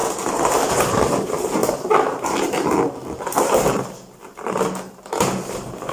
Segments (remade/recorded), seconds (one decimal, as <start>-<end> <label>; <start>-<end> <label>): 0.0-0.7 recorded; 0.7-1.6 remade; 1.6-5.1 recorded; 5.1-5.9 remade